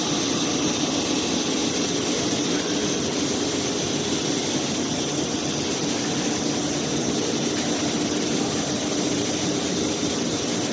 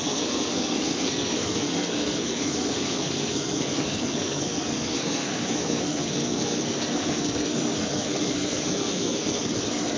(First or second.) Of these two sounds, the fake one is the second